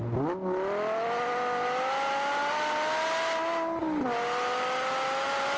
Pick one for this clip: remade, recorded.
recorded